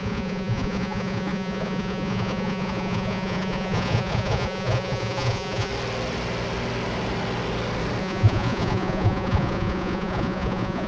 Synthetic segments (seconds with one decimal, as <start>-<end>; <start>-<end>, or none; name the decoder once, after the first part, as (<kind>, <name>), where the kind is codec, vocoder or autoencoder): 0.0-5.7 (vocoder, Vocos); 8.0-10.9